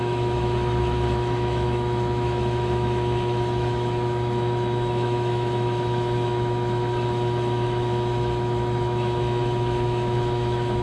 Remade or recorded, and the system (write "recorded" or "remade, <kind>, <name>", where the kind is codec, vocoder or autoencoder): remade, autoencoder, DAC-VAE